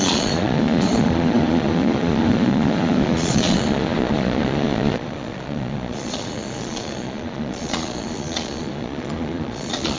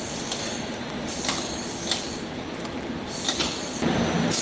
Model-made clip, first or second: first